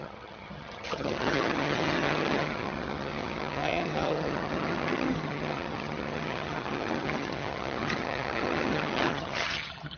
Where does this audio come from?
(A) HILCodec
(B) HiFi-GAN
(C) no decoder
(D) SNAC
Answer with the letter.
B